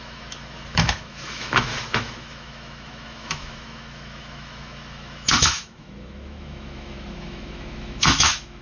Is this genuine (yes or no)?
no